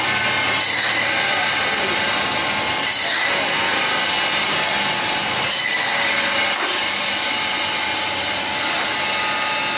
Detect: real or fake real